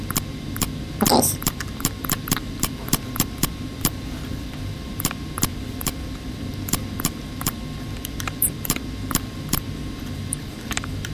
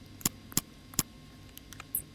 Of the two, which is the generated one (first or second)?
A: first